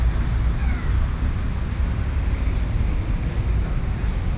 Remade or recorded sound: recorded